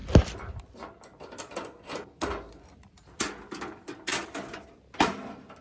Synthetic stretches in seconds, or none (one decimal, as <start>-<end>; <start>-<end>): 0.0-1.5